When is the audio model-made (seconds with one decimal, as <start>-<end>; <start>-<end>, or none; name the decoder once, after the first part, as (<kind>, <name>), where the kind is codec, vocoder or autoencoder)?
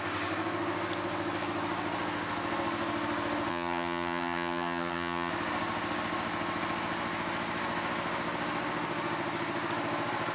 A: 3.5-5.3 (vocoder, HiFi-GAN)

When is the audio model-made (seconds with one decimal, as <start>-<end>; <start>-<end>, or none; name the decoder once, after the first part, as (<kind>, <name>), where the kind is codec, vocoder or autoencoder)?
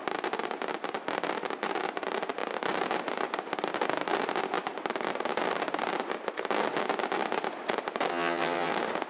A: 8.1-8.7 (vocoder, HiFi-GAN)